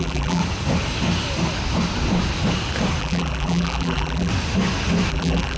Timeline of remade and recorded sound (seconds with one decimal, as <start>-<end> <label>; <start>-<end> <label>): 0.0-0.4 remade; 0.4-3.0 recorded; 3.0-4.3 remade; 4.3-5.1 recorded; 5.1-5.6 remade